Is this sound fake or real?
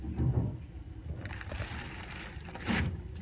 real